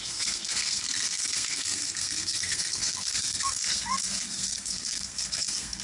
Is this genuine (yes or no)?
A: no